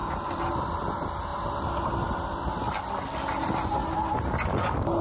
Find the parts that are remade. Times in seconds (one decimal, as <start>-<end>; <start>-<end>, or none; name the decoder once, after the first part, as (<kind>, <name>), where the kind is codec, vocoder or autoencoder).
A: none